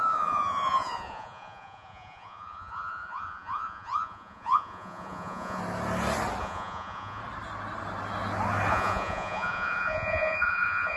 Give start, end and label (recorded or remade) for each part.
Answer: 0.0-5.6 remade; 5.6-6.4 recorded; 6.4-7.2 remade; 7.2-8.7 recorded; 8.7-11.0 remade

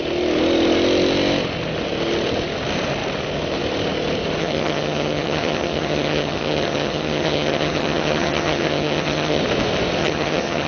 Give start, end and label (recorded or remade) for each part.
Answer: 0.0-4.4 recorded; 4.4-9.4 remade; 9.4-10.0 recorded; 10.0-10.7 remade

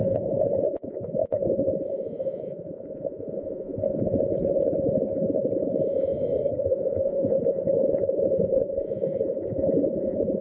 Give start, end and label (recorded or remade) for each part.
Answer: 0.0-6.1 remade; 6.1-6.6 recorded; 6.6-10.4 remade

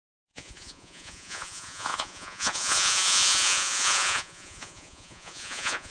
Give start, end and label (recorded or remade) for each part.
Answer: 0.0-5.9 remade

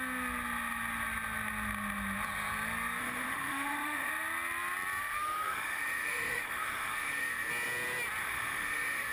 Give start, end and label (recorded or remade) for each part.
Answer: 0.0-3.0 recorded; 3.0-4.1 remade; 4.1-5.0 recorded; 5.0-7.5 remade; 7.5-8.2 recorded; 8.2-9.1 remade

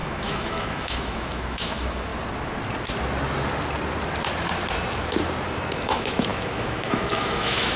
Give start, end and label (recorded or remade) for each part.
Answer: 0.0-2.1 remade; 2.1-5.8 recorded; 5.8-7.8 remade

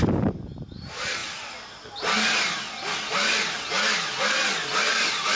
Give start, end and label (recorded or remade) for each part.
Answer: 0.0-5.3 recorded

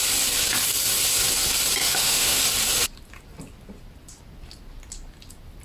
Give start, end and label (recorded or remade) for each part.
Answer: 0.0-1.8 recorded; 1.8-2.4 remade; 2.4-5.6 recorded